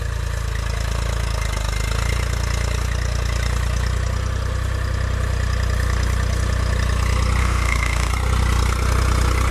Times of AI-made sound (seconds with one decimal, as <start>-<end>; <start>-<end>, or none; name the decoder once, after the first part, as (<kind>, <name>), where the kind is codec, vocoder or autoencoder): 7.4-8.1 (autoencoder, DAC-VAE)